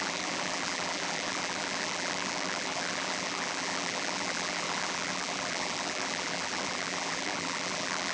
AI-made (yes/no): yes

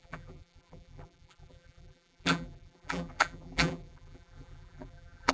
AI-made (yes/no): yes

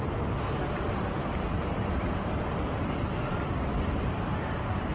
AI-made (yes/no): yes